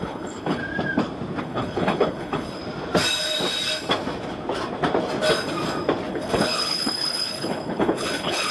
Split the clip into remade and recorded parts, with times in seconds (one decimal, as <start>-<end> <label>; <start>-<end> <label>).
0.0-0.6 remade; 0.6-1.4 recorded; 1.4-2.6 remade; 2.6-6.1 recorded; 6.1-8.5 remade